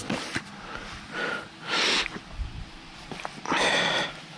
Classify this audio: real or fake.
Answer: real